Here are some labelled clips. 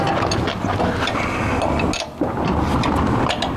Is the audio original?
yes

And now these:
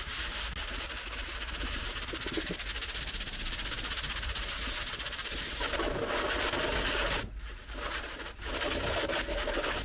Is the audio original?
yes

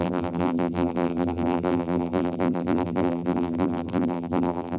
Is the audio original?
no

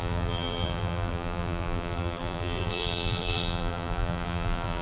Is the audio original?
no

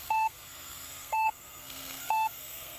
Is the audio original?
no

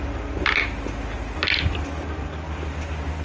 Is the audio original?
yes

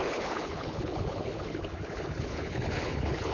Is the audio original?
no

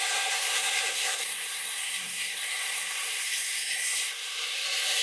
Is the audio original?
no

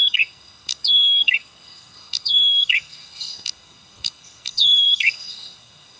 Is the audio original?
no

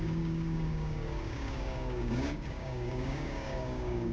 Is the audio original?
no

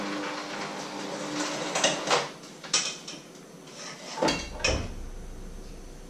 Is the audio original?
yes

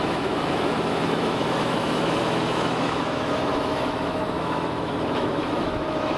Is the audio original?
no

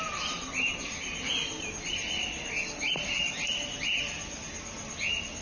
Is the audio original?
yes